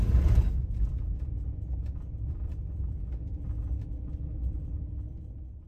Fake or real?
real